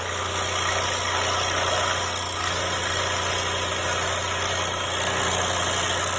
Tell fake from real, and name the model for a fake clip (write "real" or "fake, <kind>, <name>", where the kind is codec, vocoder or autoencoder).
real